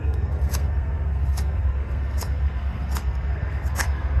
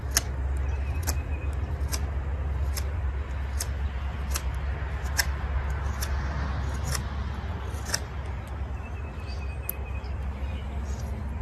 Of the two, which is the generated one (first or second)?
first